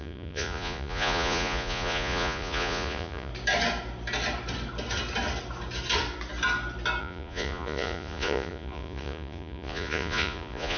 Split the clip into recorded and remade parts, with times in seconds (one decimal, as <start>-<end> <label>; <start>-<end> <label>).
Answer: 0.0-3.3 remade; 3.3-7.0 recorded; 7.0-10.8 remade